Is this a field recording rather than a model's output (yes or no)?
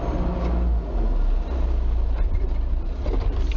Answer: yes